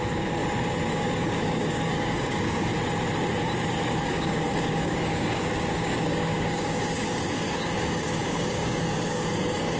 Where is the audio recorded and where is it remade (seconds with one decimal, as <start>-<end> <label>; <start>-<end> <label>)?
0.0-0.4 remade; 0.4-0.9 recorded; 0.9-2.7 remade; 2.7-4.0 recorded; 4.0-9.8 remade